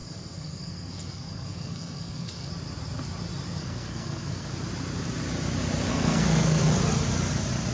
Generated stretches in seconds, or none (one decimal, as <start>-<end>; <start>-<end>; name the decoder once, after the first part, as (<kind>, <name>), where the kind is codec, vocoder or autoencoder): 0.0-2.5 (codec, SNAC); 3.6-4.5; 5.9-6.6